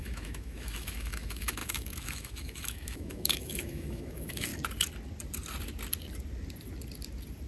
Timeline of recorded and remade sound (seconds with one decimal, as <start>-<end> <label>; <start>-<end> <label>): 0.0-4.5 remade; 4.5-7.5 recorded